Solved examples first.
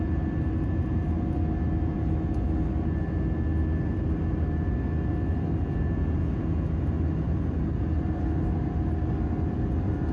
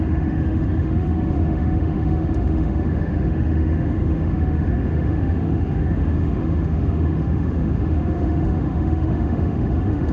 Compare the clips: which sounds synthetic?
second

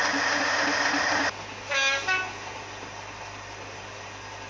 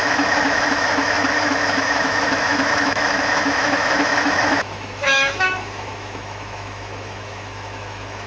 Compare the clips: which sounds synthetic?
second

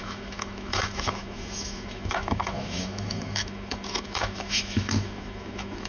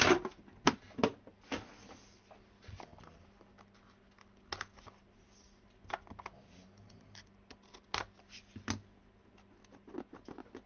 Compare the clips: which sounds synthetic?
first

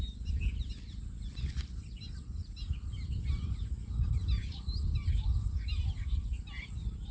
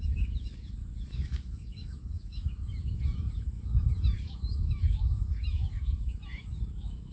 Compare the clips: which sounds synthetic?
second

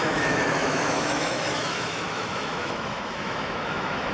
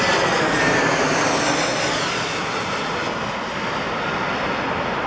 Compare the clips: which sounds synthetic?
first